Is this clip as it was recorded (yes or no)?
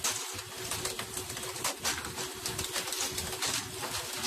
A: yes